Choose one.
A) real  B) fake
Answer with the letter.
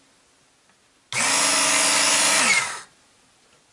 A